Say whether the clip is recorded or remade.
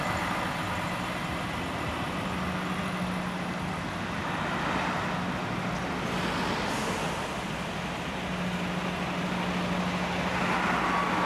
recorded